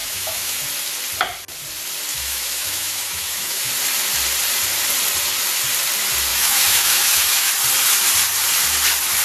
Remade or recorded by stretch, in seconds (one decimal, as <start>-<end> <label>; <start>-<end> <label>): 0.0-0.6 remade; 0.6-2.1 recorded; 2.1-3.7 remade; 3.7-6.3 recorded; 6.3-7.5 remade; 7.5-9.2 recorded